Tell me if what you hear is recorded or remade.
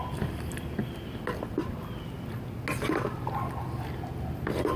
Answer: recorded